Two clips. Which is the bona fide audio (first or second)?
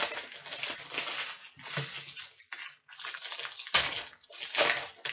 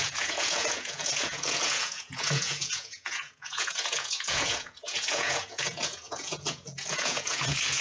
first